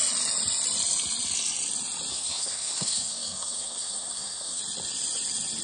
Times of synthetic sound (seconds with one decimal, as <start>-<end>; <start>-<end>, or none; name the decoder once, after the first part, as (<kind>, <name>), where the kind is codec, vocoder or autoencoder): 2.1-4.6 (codec, SNAC)